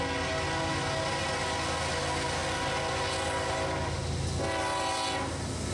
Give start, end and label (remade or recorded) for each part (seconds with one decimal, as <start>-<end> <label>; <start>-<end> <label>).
0.0-5.7 recorded